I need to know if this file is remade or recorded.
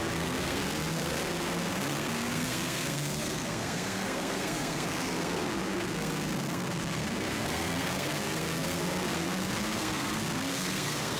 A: remade